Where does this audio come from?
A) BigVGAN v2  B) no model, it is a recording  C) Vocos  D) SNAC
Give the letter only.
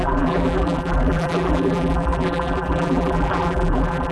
A